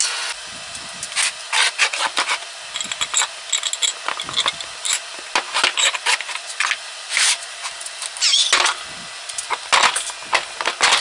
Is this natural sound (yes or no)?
yes